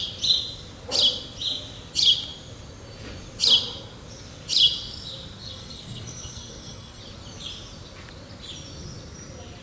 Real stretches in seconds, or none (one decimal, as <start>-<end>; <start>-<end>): 0.0-5.4; 7.0-9.6